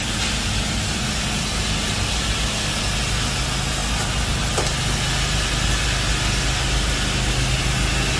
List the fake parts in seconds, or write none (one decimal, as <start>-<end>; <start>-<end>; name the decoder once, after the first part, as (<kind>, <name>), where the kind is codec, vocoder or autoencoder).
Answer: none